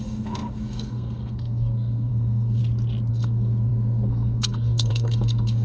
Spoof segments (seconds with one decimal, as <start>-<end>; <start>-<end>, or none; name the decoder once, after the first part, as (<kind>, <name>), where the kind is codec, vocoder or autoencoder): 0.0-2.6 (codec, SNAC); 3.1-5.6